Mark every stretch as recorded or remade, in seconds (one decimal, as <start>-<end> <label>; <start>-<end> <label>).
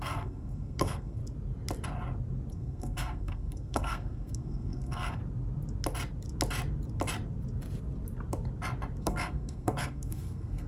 0.0-1.2 remade; 1.2-2.5 recorded; 2.5-5.2 remade; 5.2-9.0 recorded; 9.0-10.7 remade